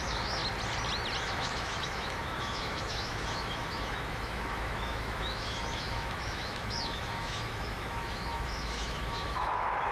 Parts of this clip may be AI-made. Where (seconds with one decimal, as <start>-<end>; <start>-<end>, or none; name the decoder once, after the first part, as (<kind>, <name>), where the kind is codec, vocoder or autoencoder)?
0.0-0.4 (autoencoder, DAC-VAE); 1.2-9.9